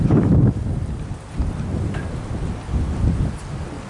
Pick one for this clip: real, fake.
real